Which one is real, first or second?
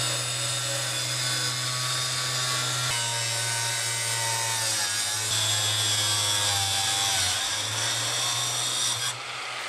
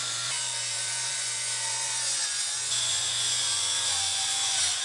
first